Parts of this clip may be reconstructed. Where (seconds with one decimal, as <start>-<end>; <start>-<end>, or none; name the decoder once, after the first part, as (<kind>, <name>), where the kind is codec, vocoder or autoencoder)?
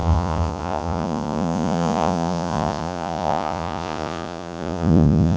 0.0-5.4 (vocoder, Vocos)